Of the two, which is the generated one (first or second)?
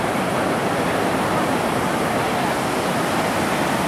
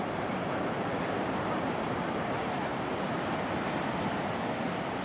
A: second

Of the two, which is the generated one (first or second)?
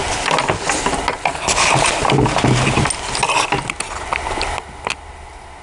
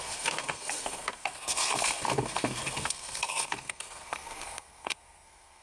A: second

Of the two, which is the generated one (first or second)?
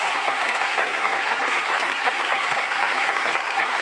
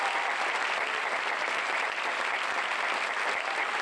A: first